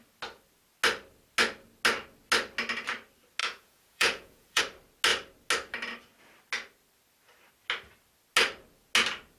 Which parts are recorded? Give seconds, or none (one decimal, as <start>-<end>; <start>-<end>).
0.0-3.4; 4.6-9.4